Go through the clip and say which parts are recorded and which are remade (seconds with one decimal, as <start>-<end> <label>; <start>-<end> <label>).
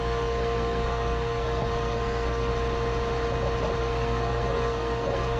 0.0-2.5 remade; 2.5-3.8 recorded; 3.8-5.4 remade